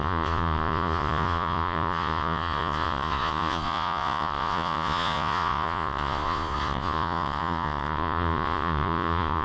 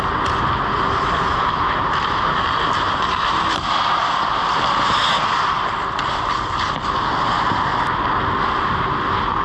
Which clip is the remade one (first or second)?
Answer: first